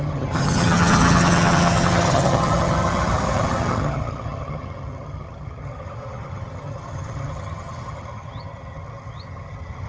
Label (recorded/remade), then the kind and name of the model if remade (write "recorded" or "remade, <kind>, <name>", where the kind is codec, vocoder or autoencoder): remade, vocoder, HiFi-GAN